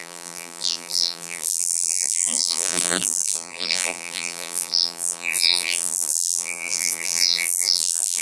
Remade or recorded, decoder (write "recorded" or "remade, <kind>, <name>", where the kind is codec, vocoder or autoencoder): remade, vocoder, BigVGAN v2